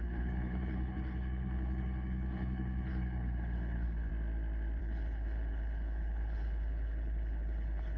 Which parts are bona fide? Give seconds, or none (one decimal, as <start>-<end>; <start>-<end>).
4.1-4.8